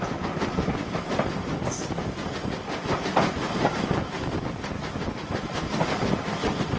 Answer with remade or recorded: recorded